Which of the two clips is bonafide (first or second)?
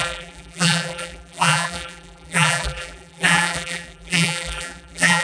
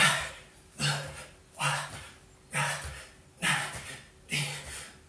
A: second